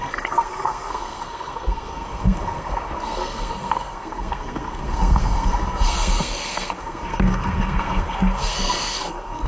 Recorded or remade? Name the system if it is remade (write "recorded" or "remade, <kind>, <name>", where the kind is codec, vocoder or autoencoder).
remade, codec, SNAC